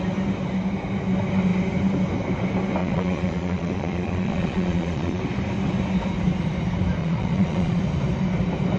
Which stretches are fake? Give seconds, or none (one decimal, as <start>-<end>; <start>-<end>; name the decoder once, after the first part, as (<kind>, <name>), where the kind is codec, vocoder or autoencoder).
2.8-5.2 (vocoder, Vocos); 7.0-7.8